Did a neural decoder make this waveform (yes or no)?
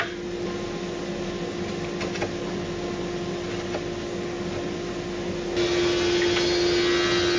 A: no